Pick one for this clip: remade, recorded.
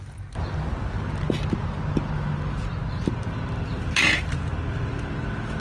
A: recorded